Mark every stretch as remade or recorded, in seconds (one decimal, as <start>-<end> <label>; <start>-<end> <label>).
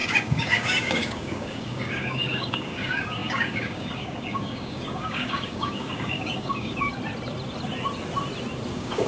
0.0-6.9 remade; 6.9-8.7 recorded; 8.7-9.1 remade